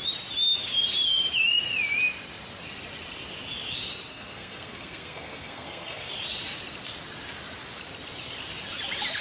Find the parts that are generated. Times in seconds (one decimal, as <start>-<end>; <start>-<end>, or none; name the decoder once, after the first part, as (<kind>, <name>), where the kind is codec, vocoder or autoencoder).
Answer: 4.1-6.1 (codec, SNAC)